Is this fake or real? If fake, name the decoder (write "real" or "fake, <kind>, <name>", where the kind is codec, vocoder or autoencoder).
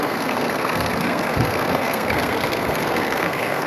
fake, codec, SNAC